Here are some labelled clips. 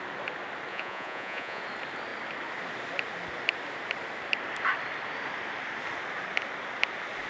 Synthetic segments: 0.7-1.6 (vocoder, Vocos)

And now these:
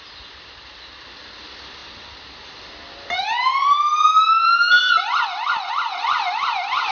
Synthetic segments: none

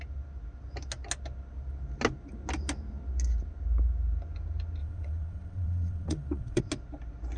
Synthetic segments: 4.8-6.6 (vocoder, WaveNeXt)

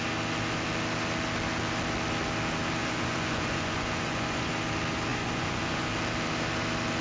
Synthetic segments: 2.8-4.5 (vocoder, Vocos); 5.1-5.9